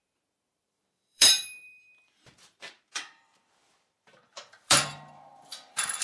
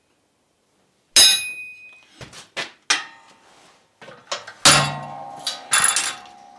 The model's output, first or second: first